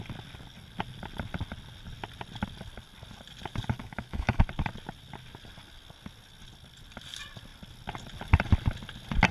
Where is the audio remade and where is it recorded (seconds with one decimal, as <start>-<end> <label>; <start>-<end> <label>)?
0.0-3.8 recorded; 3.8-4.4 remade; 4.4-9.3 recorded